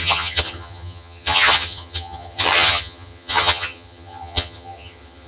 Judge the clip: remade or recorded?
remade